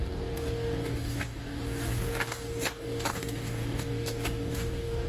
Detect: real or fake fake